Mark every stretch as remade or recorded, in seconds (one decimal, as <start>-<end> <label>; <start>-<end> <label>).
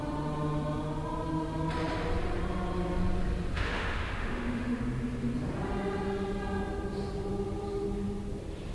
0.0-3.5 recorded; 3.5-4.8 remade; 4.8-8.7 recorded